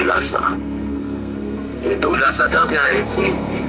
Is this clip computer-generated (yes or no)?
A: yes